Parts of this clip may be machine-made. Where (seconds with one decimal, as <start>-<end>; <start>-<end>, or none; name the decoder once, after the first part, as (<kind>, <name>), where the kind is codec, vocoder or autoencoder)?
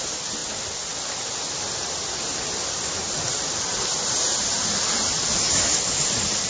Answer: none